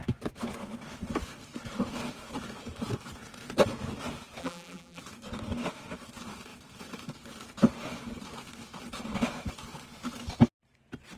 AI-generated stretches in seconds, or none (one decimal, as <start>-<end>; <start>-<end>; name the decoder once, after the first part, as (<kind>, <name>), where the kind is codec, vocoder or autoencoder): 4.4-5.0 (vocoder, BigVGAN v2)